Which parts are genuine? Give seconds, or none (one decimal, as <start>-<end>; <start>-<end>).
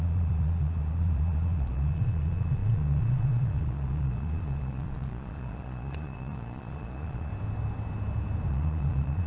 7.3-8.5